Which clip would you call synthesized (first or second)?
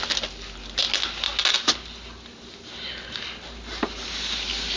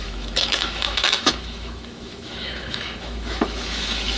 second